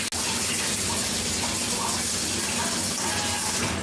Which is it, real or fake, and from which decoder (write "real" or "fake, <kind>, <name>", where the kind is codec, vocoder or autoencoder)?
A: real